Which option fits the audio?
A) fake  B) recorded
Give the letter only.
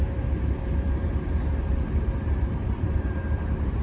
A